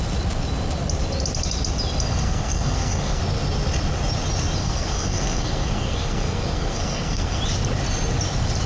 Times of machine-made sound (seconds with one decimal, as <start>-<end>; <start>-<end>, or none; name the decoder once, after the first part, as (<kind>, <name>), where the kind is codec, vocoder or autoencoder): 2.2-3.2 (codec, SNAC); 4.6-7.4